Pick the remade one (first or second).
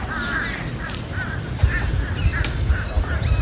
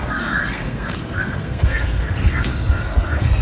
second